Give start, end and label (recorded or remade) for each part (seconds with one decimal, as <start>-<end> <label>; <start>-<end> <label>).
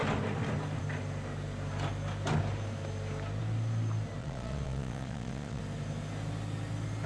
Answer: 0.0-4.2 recorded; 4.2-5.6 remade; 5.6-7.1 recorded